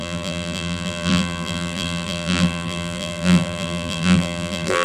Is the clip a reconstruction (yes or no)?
yes